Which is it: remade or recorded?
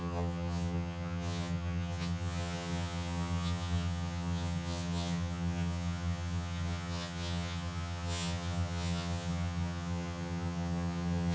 remade